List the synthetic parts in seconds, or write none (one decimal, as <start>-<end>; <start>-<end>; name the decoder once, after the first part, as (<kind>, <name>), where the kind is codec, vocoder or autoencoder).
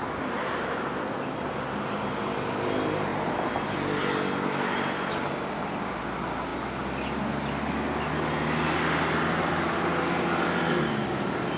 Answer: none